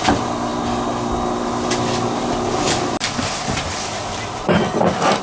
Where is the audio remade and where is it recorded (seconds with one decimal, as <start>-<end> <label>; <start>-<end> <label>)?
0.0-5.2 recorded